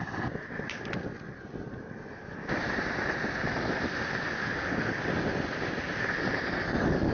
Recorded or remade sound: recorded